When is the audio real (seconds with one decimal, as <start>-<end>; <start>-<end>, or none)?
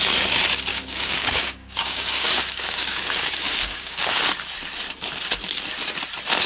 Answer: 0.0-0.7; 4.2-6.5